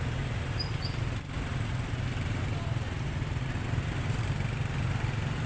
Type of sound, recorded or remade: recorded